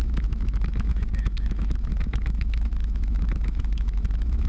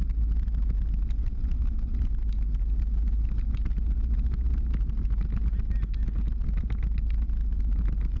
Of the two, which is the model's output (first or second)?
first